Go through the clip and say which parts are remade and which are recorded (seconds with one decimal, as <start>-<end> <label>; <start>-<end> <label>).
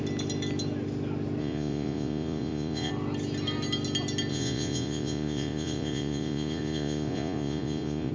0.0-1.4 recorded; 1.4-2.9 remade; 2.9-4.3 recorded; 4.3-8.1 remade